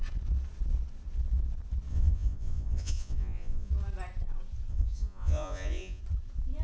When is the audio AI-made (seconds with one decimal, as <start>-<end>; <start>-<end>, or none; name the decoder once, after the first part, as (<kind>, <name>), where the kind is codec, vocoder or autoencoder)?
1.9-3.7 (vocoder, Vocos); 4.7-6.0